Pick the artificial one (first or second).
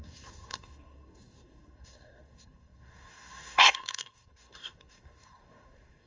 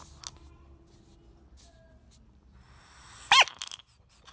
first